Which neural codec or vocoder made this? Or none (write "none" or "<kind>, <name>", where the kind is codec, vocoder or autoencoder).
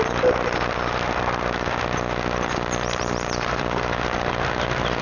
none